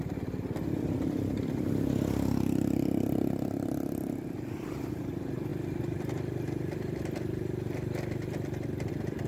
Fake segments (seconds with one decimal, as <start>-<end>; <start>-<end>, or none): none